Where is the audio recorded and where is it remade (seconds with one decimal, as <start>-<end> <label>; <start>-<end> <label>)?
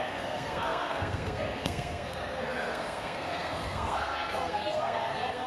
0.0-5.5 remade